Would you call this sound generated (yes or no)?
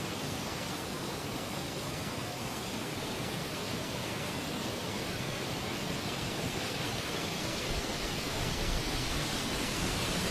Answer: yes